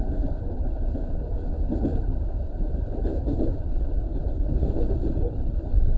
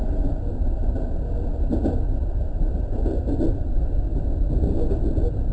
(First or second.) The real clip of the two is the second